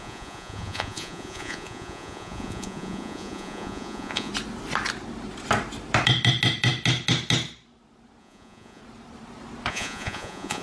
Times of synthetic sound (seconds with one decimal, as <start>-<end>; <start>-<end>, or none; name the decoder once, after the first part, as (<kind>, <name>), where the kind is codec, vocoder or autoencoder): 0.0-4.3 (vocoder, Vocos); 8.2-8.8; 9.7-10.6